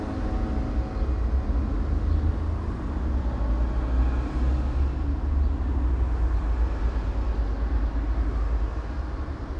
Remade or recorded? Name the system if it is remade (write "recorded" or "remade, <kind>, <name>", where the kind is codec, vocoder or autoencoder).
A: recorded